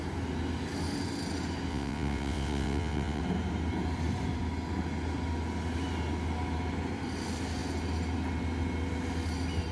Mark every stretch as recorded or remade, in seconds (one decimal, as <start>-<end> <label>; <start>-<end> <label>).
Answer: 0.0-1.7 recorded; 1.7-3.2 remade; 3.2-9.7 recorded